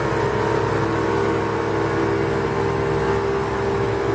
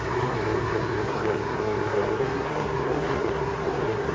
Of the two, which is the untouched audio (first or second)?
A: first